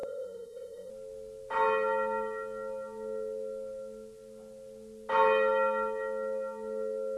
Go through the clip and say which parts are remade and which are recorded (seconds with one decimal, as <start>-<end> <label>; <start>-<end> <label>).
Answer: 0.0-0.9 remade; 0.9-7.2 recorded